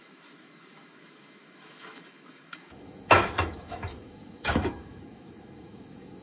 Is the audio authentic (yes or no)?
no